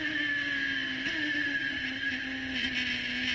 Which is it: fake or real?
real